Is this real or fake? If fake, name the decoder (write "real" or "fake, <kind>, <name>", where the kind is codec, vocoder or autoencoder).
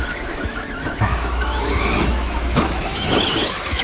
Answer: fake, autoencoder, DAC-VAE